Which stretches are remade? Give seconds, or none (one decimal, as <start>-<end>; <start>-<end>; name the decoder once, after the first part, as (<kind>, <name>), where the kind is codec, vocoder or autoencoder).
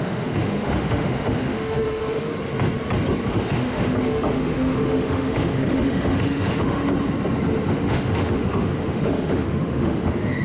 0.0-2.3 (autoencoder, DAC-VAE); 3.3-6.8; 7.7-10.4